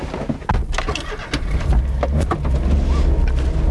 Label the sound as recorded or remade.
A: recorded